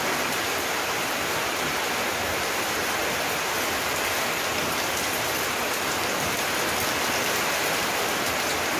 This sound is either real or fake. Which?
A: fake